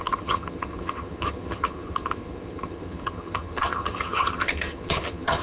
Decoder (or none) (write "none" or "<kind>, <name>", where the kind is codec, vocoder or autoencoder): vocoder, HiFi-GAN